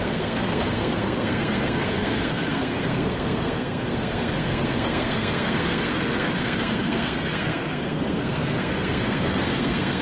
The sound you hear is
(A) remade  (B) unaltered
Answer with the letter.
A